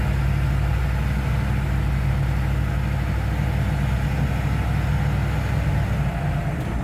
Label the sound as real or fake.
real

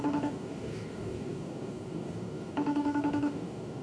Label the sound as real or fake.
fake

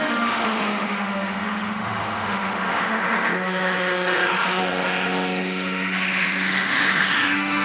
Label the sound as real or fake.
fake